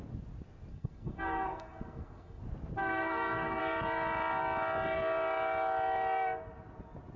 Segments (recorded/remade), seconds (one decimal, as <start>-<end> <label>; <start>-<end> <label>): 0.0-0.7 recorded; 0.7-2.4 remade; 2.4-2.8 recorded; 2.8-3.6 remade; 3.6-7.2 recorded